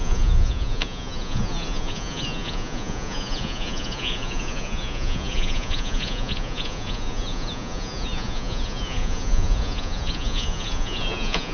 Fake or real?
fake